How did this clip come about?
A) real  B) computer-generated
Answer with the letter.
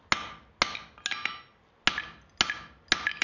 A